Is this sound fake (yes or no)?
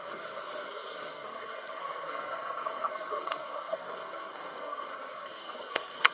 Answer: yes